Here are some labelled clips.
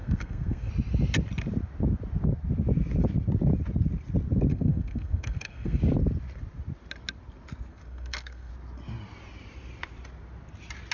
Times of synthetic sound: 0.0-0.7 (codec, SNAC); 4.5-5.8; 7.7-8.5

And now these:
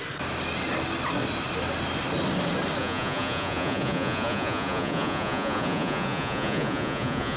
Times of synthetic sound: 2.8-7.4 (vocoder, Vocos)

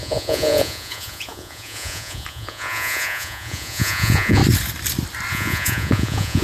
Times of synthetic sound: 0.0-4.4 (vocoder, Vocos); 5.3-6.4

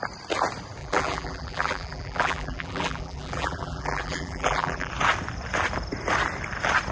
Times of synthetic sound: 0.8-4.9 (vocoder, BigVGAN v2)

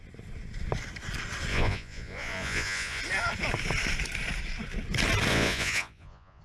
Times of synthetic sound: 1.5-3.0 (vocoder, Vocos); 5.3-6.4

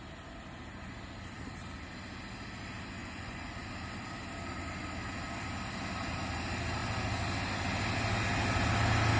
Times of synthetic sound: 3.0-3.7 (vocoder, Vocos)

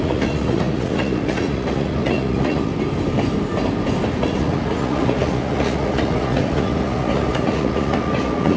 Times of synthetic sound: 0.0-2.7 (vocoder, Vocos); 4.1-8.6

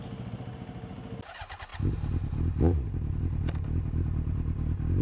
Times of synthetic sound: none